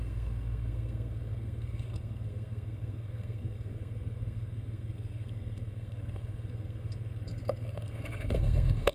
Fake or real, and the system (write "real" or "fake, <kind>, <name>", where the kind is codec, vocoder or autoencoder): fake, codec, SNAC